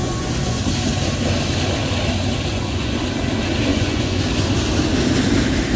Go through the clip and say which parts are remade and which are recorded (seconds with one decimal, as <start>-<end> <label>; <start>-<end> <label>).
0.0-0.6 remade; 0.6-2.5 recorded; 2.5-3.0 remade; 3.0-3.7 recorded; 3.7-4.2 remade; 4.2-5.8 recorded